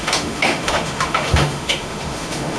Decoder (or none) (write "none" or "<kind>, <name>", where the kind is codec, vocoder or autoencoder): autoencoder, DAC-VAE